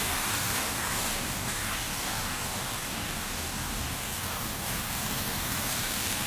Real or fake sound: fake